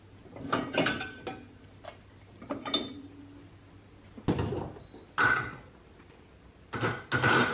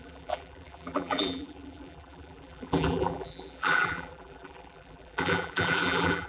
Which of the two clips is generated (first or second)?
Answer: second